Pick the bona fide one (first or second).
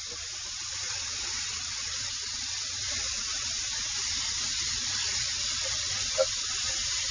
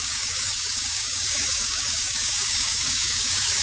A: first